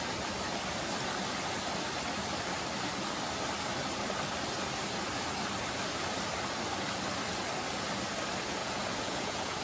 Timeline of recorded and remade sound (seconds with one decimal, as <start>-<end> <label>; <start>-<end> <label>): 0.0-8.6 recorded; 8.6-9.6 remade